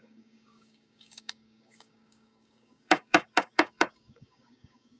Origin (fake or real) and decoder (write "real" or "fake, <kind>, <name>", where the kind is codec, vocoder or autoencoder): fake, codec, DAC